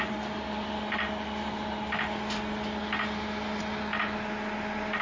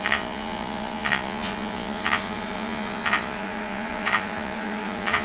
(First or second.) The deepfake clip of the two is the second